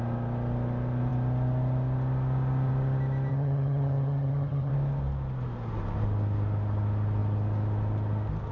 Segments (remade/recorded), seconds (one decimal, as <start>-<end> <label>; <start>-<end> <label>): 0.0-3.3 recorded; 3.3-4.7 remade; 4.7-8.5 recorded